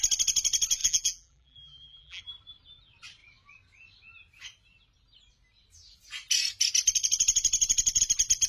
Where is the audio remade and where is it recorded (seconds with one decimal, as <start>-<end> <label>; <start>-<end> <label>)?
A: 0.0-0.8 recorded; 0.8-2.2 remade; 2.2-8.5 recorded